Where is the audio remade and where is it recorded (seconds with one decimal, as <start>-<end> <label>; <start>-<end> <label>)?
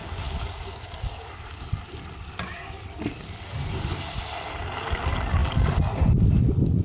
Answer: 0.0-1.8 remade; 1.8-6.8 recorded